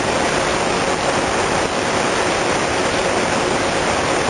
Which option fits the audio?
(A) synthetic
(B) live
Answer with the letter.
B